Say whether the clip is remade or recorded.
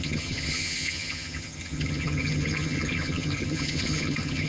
remade